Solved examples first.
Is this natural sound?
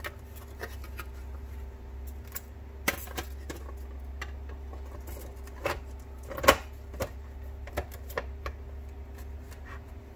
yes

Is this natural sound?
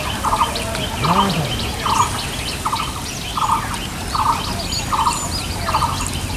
yes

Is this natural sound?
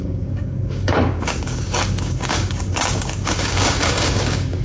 no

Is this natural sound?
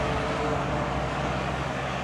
no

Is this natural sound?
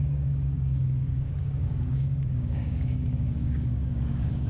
no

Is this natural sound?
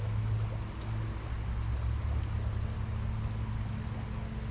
yes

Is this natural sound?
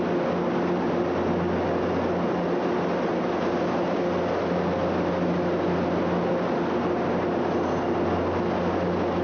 yes